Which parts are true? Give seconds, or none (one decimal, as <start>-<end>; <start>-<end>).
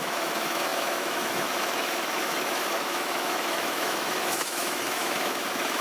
none